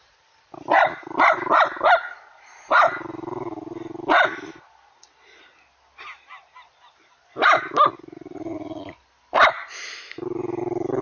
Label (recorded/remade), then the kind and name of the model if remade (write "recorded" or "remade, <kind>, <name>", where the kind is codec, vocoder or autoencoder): recorded